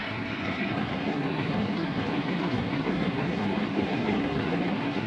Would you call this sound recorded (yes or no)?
no